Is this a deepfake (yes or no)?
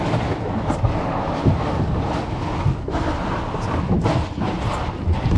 no